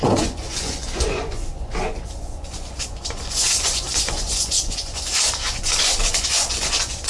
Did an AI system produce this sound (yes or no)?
yes